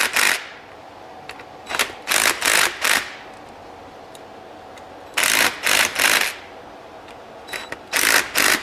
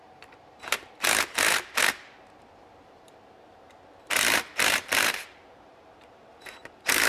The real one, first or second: first